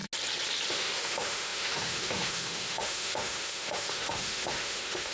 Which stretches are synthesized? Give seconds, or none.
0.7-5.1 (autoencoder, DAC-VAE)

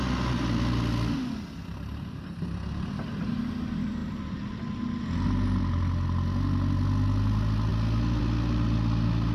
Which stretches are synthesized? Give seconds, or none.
none

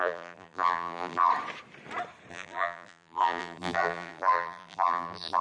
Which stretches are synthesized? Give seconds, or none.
0.0-1.3 (vocoder, BigVGAN v2); 2.3-5.4

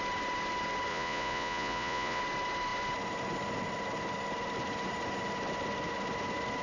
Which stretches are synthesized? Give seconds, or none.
0.9-2.2 (vocoder, Vocos)

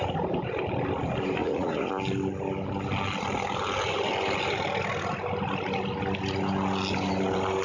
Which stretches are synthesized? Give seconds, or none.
1.4-1.9 (vocoder, Vocos)